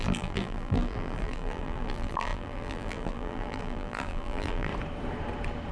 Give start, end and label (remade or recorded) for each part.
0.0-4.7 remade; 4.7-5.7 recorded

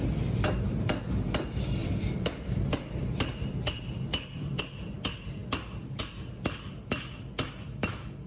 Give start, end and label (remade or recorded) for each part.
0.0-1.8 recorded; 1.8-4.6 remade; 4.6-8.3 recorded

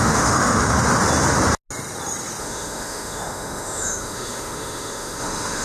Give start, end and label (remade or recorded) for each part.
0.0-0.7 remade; 0.7-2.4 recorded; 2.4-5.6 remade

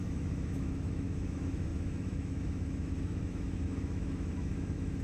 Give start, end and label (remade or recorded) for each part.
0.0-5.0 remade